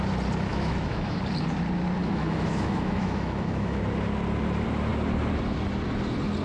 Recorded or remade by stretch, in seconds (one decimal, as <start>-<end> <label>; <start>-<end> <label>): 0.0-0.5 recorded; 0.5-1.2 remade; 1.2-2.0 recorded; 2.0-3.8 remade; 3.8-6.4 recorded